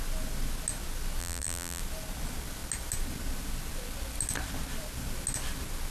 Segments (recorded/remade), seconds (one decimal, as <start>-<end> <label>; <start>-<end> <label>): 0.0-1.2 recorded; 1.2-1.8 remade; 1.8-5.9 recorded